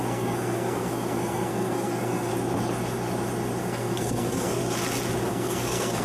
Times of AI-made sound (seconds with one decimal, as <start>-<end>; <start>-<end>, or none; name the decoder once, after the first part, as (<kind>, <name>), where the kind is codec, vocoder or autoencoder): 0.0-2.3 (codec, SNAC); 3.6-4.6; 5.3-6.0

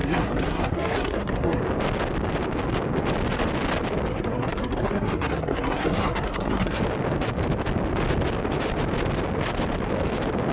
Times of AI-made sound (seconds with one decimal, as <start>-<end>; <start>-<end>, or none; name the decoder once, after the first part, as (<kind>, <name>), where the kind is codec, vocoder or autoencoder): 0.0-1.6 (codec, SNAC); 4.1-6.8

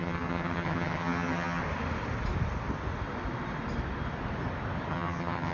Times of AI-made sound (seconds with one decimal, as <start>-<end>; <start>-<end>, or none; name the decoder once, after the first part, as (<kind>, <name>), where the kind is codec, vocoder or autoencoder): 0.0-1.6 (vocoder, HiFi-GAN); 4.9-5.5

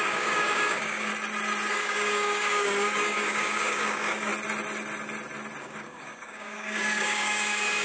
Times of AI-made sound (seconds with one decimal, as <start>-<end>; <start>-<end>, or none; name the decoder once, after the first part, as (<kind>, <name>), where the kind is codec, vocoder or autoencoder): 0.0-1.1 (codec, DAC); 1.7-4.3; 5.6-7.8

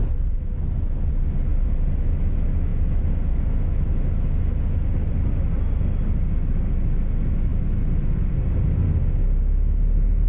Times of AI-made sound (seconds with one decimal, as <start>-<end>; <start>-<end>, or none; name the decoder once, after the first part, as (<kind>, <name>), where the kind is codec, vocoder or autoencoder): none

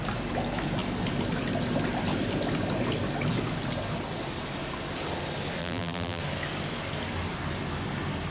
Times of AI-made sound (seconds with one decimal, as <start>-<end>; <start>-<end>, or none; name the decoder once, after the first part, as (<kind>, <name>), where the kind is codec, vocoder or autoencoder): 5.6-6.2 (vocoder, BigVGAN v2)